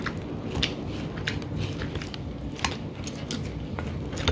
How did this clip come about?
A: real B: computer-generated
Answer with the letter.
A